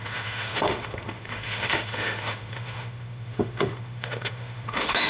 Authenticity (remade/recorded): remade